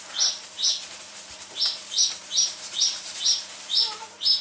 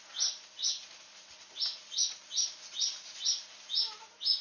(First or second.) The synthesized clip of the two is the first